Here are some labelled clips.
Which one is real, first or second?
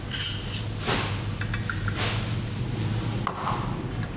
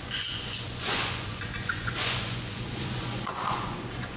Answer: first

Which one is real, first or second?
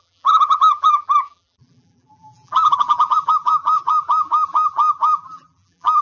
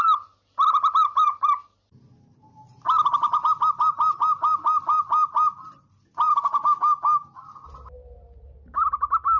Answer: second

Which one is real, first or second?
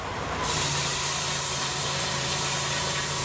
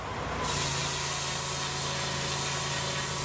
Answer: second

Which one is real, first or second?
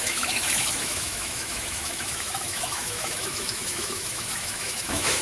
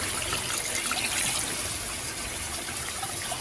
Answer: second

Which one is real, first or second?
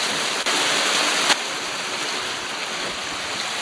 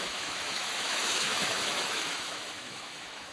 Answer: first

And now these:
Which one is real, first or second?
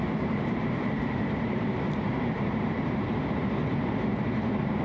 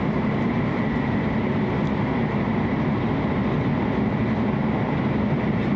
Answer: second